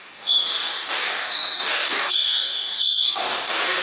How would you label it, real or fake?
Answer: fake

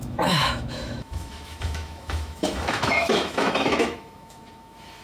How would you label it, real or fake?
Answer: fake